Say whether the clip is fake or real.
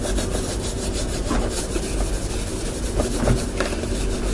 real